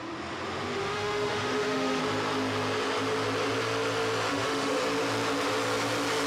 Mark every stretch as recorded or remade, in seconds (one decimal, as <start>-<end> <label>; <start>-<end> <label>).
0.0-0.8 recorded; 0.8-2.0 remade; 2.0-4.3 recorded; 4.3-4.8 remade; 4.8-6.3 recorded